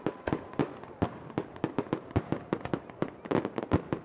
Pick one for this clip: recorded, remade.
recorded